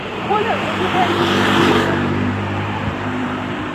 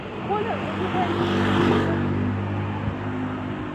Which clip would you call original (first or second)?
second